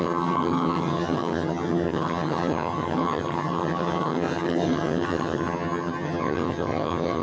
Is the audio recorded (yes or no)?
no